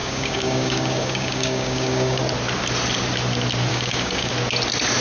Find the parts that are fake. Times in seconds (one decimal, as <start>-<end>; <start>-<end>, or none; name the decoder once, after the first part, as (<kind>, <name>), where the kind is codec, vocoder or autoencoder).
0.0-2.2 (codec, DAC); 3.7-4.3